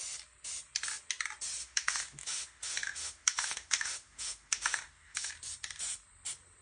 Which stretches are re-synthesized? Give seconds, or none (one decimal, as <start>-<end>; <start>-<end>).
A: 1.6-5.3